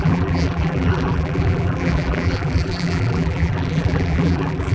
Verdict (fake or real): fake